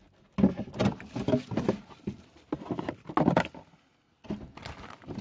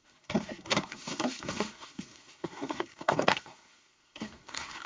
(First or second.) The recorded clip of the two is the first